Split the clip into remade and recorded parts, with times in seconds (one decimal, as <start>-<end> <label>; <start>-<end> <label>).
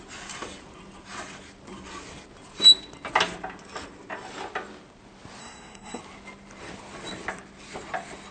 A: 0.0-5.4 recorded; 5.4-6.0 remade; 6.0-8.3 recorded